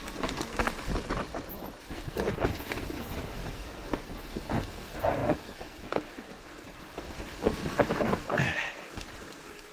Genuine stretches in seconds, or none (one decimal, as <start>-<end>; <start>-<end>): 0.9-1.8